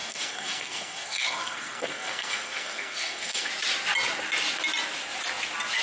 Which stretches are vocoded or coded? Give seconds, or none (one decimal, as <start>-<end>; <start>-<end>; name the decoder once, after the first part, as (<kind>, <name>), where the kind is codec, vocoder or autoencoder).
0.0-3.5 (codec, SNAC)

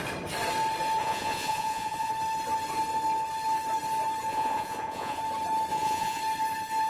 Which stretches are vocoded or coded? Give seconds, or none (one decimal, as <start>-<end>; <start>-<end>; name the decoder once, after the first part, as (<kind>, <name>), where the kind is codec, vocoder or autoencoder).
1.0-2.1 (vocoder, Vocos); 4.3-5.2; 5.7-6.2

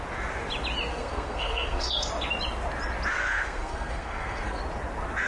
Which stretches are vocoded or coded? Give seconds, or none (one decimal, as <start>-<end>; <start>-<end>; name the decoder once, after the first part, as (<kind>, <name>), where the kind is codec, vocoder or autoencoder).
0.9-2.1 (codec, SNAC); 3.1-4.6

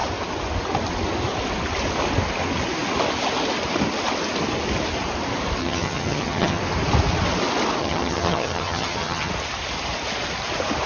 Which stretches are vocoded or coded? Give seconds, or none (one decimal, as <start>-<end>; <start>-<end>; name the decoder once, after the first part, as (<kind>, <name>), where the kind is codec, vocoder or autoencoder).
5.6-6.6 (vocoder, HiFi-GAN); 7.8-9.3

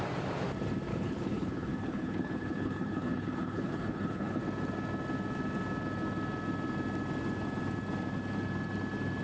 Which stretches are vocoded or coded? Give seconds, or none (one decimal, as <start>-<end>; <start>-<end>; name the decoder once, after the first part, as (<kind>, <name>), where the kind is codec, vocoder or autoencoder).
0.9-4.4 (codec, HILCodec)

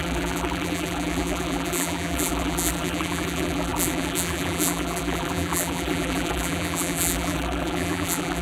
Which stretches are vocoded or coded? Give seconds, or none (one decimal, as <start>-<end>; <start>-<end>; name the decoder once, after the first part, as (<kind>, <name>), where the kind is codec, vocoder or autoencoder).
0.0-8.4 (vocoder, BigVGAN v2)

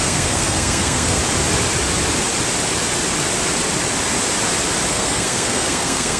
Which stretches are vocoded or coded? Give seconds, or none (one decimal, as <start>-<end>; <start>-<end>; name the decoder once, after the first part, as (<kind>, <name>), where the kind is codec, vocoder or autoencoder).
0.0-1.2 (codec, SNAC); 4.9-6.2